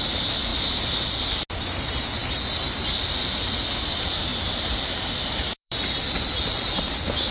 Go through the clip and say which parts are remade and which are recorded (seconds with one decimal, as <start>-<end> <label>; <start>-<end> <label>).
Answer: 0.0-0.5 remade; 0.5-1.5 recorded; 1.5-2.2 remade; 2.2-3.7 recorded; 3.7-7.3 remade